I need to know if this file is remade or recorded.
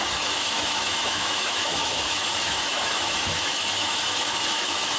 remade